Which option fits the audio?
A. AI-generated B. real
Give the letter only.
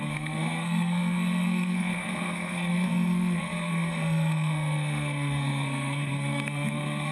A